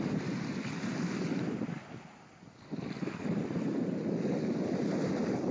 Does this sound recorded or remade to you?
recorded